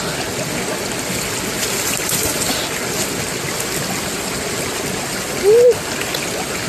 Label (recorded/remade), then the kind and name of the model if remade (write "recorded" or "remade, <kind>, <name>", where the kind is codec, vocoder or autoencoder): recorded